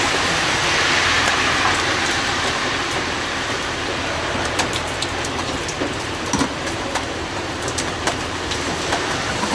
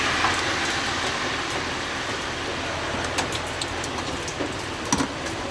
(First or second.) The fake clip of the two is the first